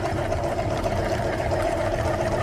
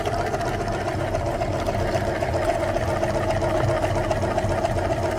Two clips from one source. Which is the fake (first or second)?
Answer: first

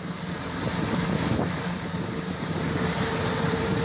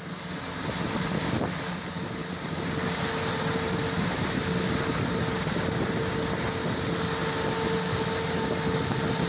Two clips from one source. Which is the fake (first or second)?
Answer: first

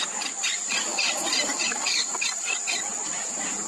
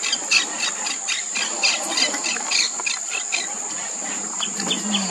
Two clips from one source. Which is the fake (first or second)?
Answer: first